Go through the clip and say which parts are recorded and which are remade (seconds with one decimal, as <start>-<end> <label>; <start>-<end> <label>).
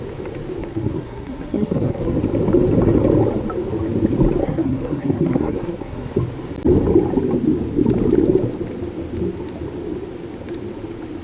0.0-0.6 recorded; 0.6-2.2 remade; 2.2-4.4 recorded; 4.4-6.2 remade; 6.2-11.2 recorded